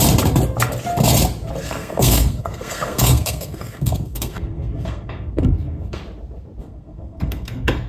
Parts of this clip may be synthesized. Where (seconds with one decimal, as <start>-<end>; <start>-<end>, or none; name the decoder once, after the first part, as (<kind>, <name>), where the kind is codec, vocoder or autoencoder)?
1.6-6.0 (codec, SNAC); 6.6-7.9